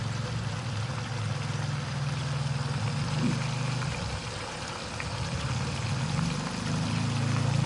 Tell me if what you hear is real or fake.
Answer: real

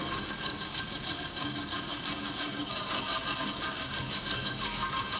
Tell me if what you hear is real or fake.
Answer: fake